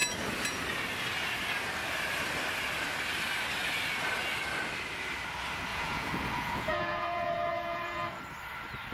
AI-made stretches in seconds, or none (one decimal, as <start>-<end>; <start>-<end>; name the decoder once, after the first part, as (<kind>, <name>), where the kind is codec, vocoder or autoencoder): 5.7-8.2 (vocoder, Vocos)